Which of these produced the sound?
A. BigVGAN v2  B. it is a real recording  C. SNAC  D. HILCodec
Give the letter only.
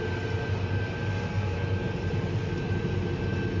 B